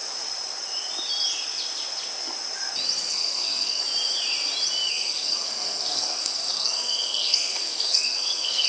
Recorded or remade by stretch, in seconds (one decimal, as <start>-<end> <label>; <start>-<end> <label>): 0.0-3.1 recorded; 3.1-3.8 remade; 3.8-4.9 recorded; 4.9-8.7 remade